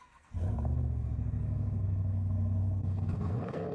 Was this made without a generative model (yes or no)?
no